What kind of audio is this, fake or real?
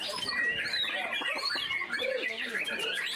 real